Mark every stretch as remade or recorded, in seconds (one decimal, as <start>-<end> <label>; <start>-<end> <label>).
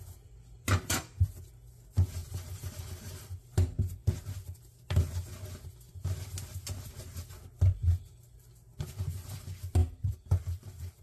0.0-2.2 recorded; 2.2-3.3 remade; 3.3-9.8 recorded; 9.8-11.0 remade